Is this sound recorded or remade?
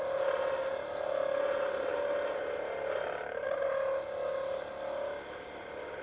recorded